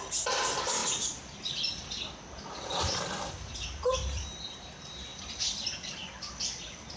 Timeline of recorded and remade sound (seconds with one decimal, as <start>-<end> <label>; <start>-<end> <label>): 0.0-0.8 remade; 0.8-2.9 recorded; 2.9-7.0 remade